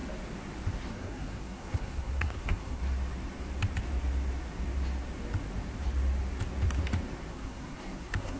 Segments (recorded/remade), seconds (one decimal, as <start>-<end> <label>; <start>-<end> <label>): 0.0-0.9 recorded; 0.9-2.8 remade; 2.8-7.3 recorded; 7.3-8.4 remade